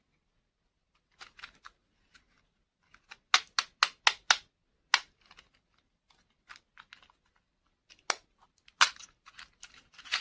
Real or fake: real